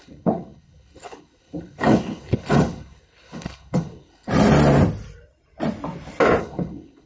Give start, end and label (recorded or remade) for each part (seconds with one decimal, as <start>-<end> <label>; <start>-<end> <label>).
0.0-4.3 remade; 4.3-6.4 recorded; 6.4-7.1 remade